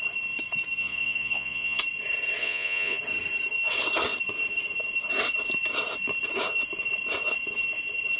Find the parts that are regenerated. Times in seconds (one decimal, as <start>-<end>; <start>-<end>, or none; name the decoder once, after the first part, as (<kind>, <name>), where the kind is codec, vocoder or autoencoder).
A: 0.8-1.8 (vocoder, Vocos); 2.4-3.0